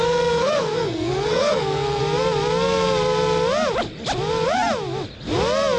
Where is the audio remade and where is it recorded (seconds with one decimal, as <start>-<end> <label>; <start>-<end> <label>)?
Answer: 0.0-2.0 remade; 2.0-5.8 recorded